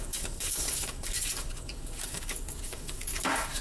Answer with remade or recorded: remade